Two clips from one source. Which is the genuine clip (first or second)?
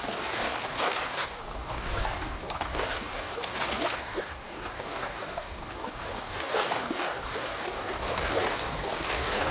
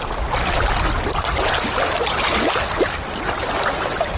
second